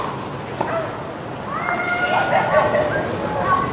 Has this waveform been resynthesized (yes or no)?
no